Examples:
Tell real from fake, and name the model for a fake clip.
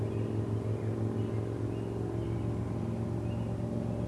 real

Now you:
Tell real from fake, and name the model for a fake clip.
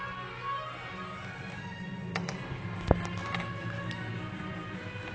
real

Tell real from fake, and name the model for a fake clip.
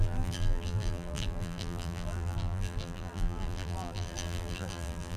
fake, vocoder, BigVGAN v2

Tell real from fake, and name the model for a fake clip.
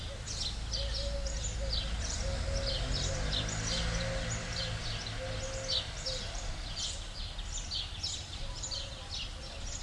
real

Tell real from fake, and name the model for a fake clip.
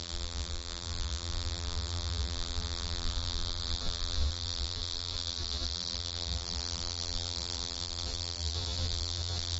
fake, vocoder, BigVGAN v2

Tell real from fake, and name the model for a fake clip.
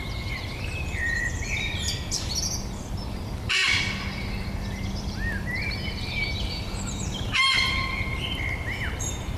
fake, vocoder, BigVGAN v2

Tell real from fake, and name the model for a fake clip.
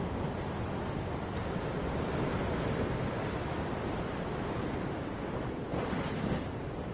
real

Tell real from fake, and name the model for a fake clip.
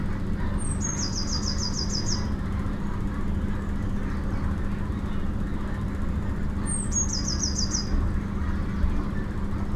real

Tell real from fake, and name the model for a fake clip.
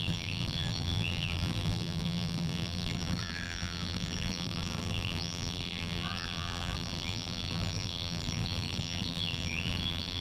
fake, vocoder, BigVGAN v2